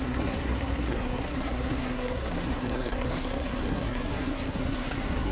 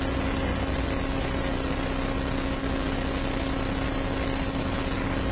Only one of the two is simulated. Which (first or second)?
first